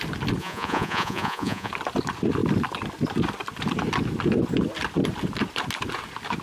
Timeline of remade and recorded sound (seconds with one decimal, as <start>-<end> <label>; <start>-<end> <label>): 0.0-0.4 recorded; 0.4-1.7 remade; 1.7-6.4 recorded

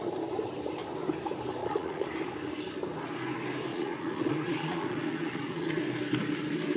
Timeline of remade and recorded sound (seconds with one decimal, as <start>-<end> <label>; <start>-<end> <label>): 0.0-1.6 recorded; 1.6-2.1 remade; 2.1-3.7 recorded; 3.7-5.8 remade; 5.8-6.8 recorded

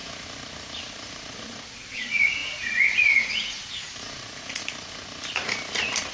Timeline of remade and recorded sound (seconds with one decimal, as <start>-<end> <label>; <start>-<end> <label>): 0.0-0.9 recorded; 0.9-4.6 remade; 4.6-6.1 recorded

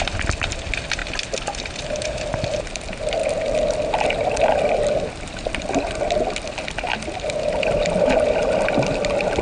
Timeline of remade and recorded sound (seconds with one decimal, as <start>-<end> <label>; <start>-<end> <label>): 0.0-9.4 recorded